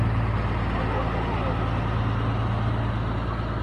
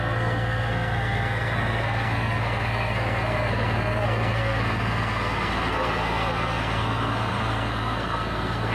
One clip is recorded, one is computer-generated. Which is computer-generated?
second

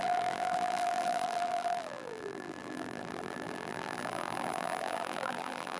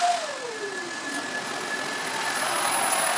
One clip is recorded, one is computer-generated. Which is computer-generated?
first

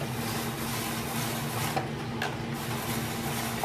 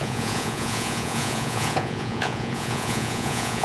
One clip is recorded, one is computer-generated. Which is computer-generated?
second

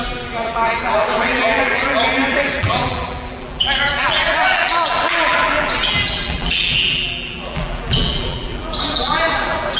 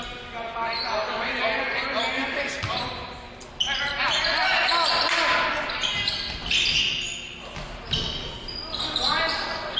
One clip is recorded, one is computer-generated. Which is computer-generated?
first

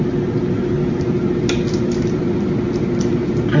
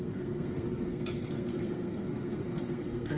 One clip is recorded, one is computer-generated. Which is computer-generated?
second